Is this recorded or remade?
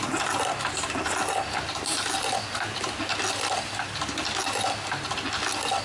recorded